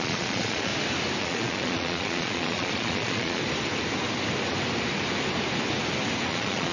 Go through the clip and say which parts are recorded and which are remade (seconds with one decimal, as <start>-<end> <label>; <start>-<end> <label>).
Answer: 0.0-0.7 remade; 0.7-1.2 recorded; 1.2-3.4 remade; 3.4-6.3 recorded; 6.3-6.7 remade